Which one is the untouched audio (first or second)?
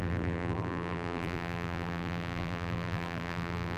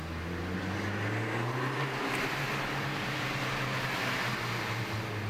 second